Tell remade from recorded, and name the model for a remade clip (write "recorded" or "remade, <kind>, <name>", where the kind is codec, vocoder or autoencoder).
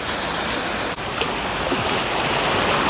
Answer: recorded